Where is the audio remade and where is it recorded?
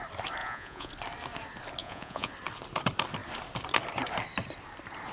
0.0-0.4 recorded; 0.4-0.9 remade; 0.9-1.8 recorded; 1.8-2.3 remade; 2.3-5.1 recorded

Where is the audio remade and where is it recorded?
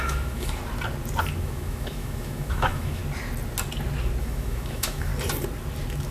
0.0-0.6 remade; 0.6-1.4 recorded; 1.4-3.0 remade; 3.0-4.2 recorded; 4.2-5.1 remade; 5.1-6.1 recorded